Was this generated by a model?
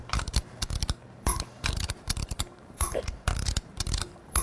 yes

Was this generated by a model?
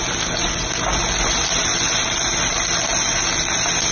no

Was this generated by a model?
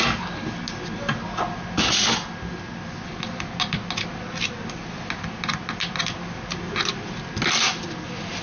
no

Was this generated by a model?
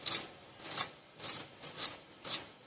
no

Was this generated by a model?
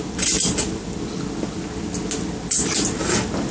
no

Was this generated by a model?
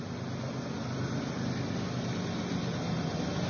no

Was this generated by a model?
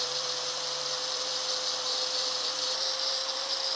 yes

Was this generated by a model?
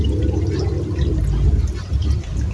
no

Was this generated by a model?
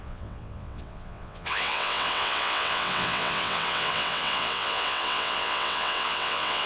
yes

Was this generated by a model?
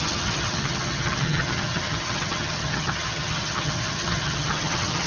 yes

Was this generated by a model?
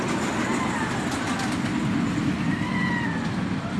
no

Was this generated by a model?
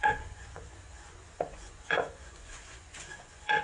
yes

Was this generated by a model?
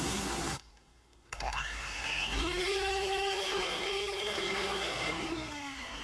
yes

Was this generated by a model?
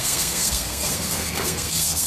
yes